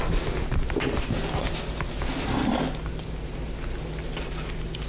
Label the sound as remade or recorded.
recorded